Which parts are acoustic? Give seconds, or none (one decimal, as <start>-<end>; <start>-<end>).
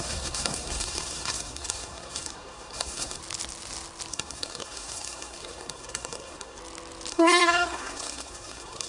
3.2-4.1; 6.6-7.1